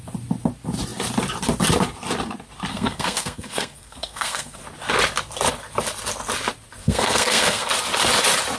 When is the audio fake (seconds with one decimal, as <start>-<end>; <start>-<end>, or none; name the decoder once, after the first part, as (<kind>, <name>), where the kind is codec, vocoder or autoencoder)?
2.7-4.6 (codec, SNAC); 6.8-7.7